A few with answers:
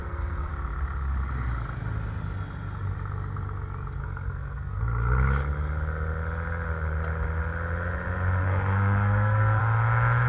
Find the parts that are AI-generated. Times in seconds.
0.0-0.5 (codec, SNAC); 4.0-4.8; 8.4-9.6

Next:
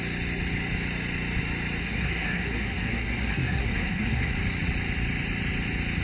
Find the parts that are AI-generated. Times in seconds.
1.8-4.3 (codec, SNAC)